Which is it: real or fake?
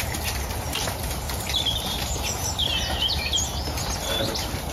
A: real